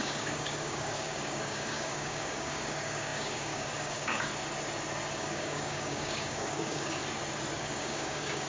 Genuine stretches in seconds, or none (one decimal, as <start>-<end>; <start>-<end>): 4.3-5.2; 7.0-7.6